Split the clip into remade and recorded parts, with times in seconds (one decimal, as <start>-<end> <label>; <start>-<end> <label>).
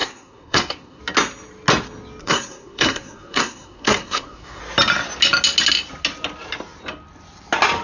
0.0-1.0 remade; 1.0-2.2 recorded; 2.2-4.6 remade; 4.6-7.8 recorded